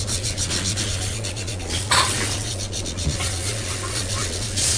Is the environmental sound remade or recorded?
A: remade